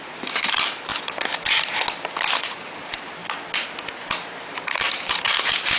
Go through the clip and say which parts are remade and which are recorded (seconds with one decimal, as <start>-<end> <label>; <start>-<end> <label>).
0.0-0.9 remade; 0.9-2.8 recorded; 2.8-3.2 remade; 3.2-3.9 recorded; 3.9-5.8 remade